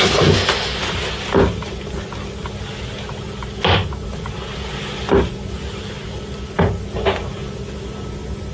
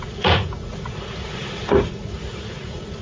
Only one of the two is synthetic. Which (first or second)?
second